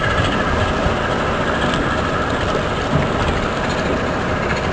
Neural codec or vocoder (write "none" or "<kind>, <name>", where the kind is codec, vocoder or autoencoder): none